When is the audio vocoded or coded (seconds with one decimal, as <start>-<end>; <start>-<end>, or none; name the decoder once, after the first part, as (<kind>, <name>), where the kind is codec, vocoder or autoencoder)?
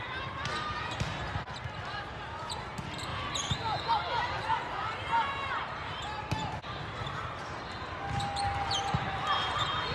none